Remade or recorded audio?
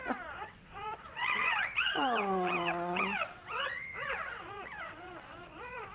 remade